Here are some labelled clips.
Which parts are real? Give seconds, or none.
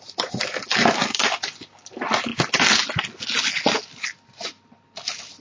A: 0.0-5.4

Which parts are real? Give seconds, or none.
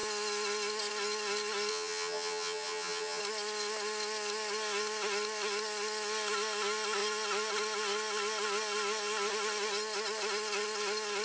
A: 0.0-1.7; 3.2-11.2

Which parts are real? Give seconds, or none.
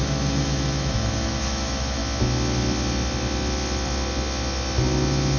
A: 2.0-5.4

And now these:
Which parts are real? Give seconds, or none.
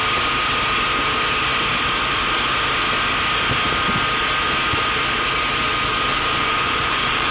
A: 0.0-6.1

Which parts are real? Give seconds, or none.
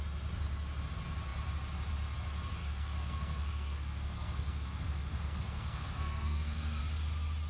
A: 0.0-2.6; 6.8-7.5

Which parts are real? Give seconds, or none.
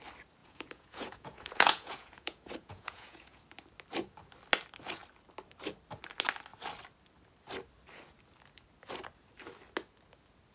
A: 0.0-0.4; 3.4-10.5